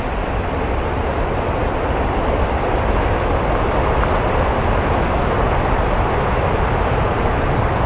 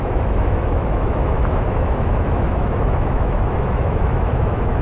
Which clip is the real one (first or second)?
first